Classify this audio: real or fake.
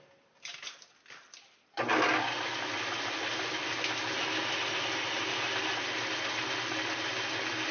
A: real